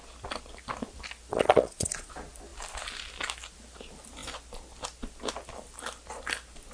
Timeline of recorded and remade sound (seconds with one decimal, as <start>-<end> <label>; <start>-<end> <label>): 0.0-1.3 recorded; 1.3-2.1 remade; 2.1-6.7 recorded